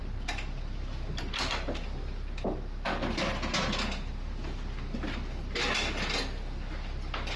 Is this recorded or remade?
recorded